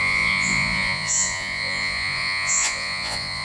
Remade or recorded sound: remade